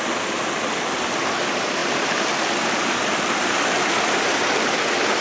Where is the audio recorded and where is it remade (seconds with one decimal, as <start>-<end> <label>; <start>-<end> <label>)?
0.0-5.2 recorded